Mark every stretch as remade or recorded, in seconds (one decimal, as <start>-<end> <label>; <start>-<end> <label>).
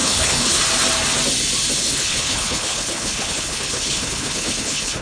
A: 0.0-0.6 remade; 0.6-1.8 recorded; 1.8-5.0 remade